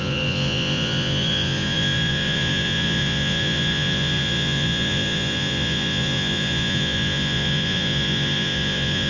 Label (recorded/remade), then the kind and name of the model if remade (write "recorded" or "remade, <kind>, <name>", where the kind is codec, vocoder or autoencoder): remade, vocoder, Vocos